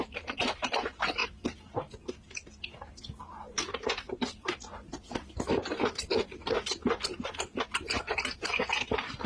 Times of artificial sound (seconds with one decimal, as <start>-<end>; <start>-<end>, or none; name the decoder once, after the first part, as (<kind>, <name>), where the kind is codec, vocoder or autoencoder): 0.0-1.2 (vocoder, BigVGAN v2); 3.4-9.3